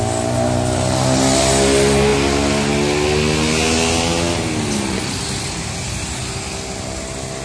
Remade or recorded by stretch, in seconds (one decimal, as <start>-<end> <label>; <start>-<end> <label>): 0.0-7.4 recorded